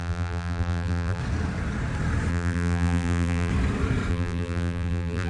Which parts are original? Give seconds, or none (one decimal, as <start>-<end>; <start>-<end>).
1.2-2.3; 3.5-4.1